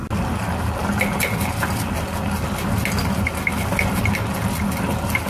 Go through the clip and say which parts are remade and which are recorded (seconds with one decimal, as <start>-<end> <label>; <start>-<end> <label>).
0.0-5.3 recorded